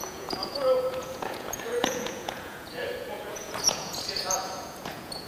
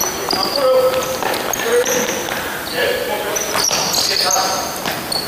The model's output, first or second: first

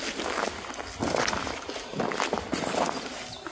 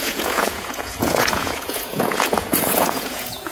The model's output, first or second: second